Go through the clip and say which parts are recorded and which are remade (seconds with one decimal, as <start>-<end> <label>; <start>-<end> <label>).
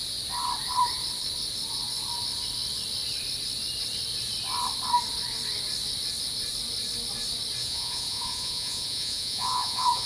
0.0-7.6 recorded; 7.6-10.1 remade